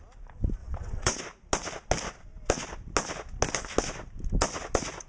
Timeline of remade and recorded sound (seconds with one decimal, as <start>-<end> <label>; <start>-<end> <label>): 0.0-0.6 recorded; 0.6-1.2 remade; 1.2-5.1 recorded